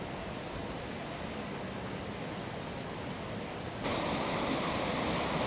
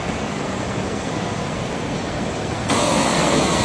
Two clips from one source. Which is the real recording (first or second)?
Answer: first